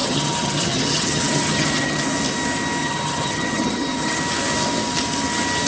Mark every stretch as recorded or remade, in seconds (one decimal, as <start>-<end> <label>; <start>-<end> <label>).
0.0-2.0 remade; 2.0-2.8 recorded; 2.8-4.2 remade; 4.2-5.7 recorded